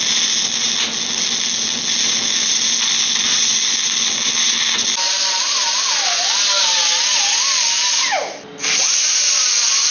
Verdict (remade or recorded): recorded